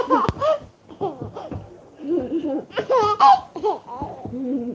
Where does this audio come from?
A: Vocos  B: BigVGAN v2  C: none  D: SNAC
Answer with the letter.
C